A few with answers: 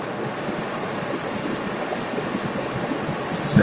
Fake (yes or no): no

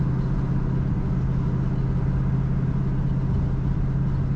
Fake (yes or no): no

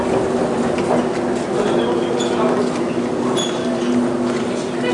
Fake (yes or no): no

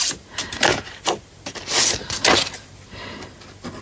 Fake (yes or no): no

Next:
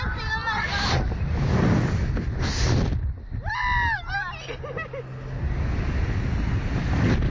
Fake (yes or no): no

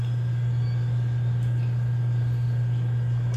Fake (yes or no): no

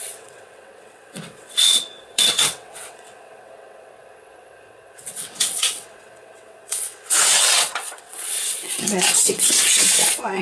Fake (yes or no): yes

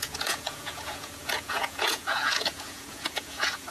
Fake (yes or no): yes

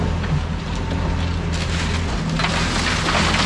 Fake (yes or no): no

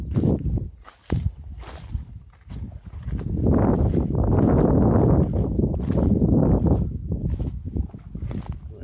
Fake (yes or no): no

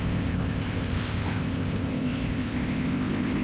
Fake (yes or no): yes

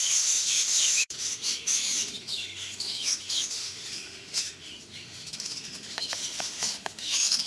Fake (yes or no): yes